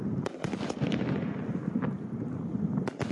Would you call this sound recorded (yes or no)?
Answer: yes